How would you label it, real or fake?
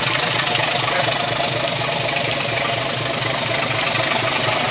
real